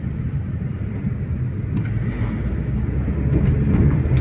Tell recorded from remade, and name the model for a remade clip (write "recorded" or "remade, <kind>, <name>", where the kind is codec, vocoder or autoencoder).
recorded